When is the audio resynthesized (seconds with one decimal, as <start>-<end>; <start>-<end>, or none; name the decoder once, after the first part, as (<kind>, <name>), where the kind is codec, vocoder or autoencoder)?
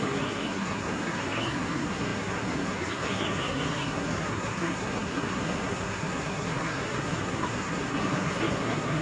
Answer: 0.0-9.0 (codec, SNAC)